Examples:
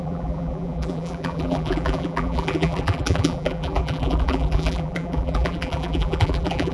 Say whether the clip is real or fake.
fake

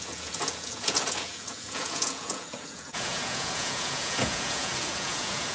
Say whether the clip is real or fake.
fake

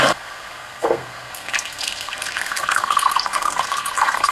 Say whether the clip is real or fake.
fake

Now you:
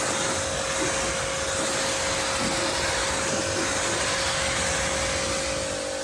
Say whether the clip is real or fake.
real